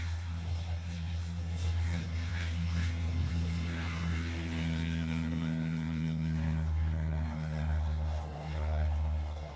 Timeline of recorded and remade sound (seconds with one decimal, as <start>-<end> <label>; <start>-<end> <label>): 0.0-9.6 remade